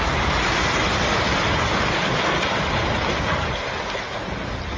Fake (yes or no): no